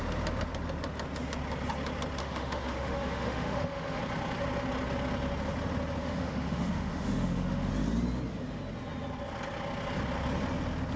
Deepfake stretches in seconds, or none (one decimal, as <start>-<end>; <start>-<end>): 2.2-4.0; 6.0-7.7